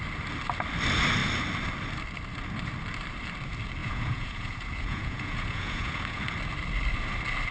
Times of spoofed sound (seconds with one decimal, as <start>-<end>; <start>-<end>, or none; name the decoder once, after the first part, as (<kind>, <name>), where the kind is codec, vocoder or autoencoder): 3.8-6.2 (vocoder, Vocos)

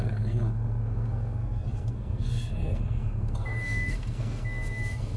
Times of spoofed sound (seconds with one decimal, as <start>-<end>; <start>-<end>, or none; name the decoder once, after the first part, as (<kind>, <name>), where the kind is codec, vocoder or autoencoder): 0.0-5.2 (codec, SNAC)